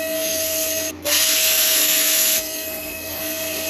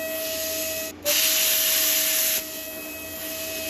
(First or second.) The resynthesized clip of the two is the first